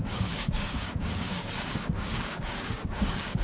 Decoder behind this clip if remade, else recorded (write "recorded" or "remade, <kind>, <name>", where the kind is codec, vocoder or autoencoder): remade, codec, DAC